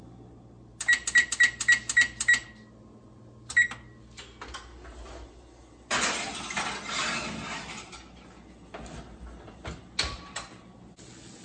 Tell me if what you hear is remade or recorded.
recorded